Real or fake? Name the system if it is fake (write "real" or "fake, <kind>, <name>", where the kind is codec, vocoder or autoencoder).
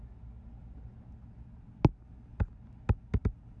real